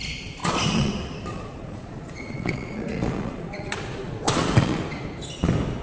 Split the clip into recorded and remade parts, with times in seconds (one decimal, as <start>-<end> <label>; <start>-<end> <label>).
0.0-0.4 recorded; 0.4-0.9 remade; 0.9-1.3 recorded; 1.3-4.8 remade; 4.8-5.8 recorded